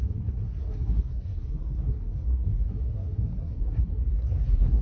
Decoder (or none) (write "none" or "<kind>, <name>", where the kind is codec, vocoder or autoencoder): codec, SNAC